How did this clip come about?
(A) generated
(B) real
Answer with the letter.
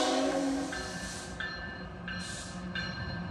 A